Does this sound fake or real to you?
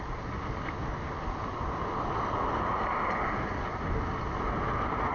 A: real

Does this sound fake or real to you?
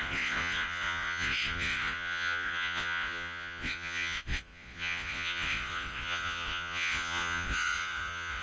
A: fake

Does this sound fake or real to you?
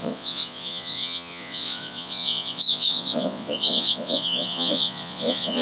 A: fake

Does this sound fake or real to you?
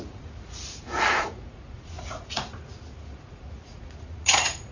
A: fake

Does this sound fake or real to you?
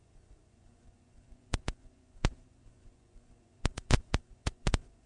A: fake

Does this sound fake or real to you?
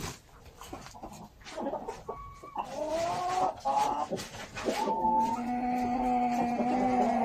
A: real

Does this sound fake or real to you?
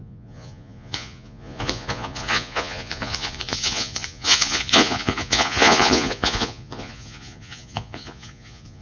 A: fake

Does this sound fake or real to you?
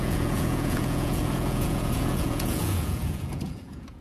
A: fake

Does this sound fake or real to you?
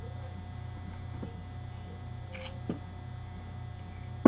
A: real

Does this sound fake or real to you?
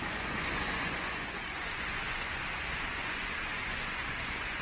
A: fake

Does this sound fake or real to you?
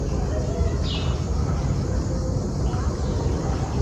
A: real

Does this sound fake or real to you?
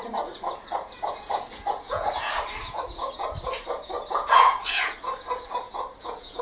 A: fake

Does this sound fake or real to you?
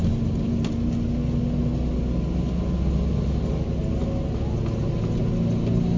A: real